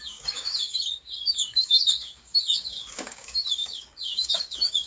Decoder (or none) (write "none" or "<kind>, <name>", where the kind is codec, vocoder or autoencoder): codec, DAC